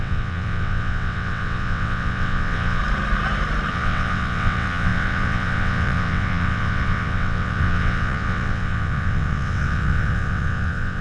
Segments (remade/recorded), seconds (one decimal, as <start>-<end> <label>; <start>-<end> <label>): 0.0-2.8 remade; 2.8-3.7 recorded; 3.7-11.0 remade